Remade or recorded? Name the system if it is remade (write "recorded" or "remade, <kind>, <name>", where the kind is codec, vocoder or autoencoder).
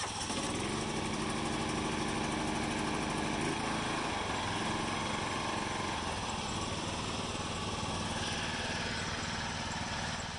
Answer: recorded